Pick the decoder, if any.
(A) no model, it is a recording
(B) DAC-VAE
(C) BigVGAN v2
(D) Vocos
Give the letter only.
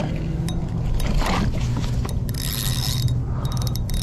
A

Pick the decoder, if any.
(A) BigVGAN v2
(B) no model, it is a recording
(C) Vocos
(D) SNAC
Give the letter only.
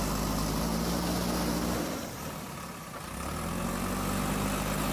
B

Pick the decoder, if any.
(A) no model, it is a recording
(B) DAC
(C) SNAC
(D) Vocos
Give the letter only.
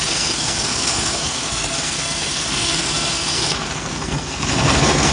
C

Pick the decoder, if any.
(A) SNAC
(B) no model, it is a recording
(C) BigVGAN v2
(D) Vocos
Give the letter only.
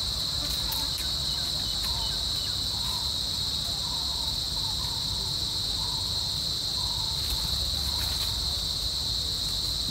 B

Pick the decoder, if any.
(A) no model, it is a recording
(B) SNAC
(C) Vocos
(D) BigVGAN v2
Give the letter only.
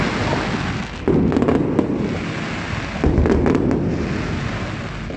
A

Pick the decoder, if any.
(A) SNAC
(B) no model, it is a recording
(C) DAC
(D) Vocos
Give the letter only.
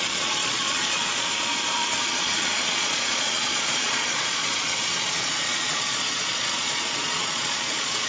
D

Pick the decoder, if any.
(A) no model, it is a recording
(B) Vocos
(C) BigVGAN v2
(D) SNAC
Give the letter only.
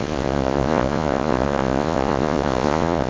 B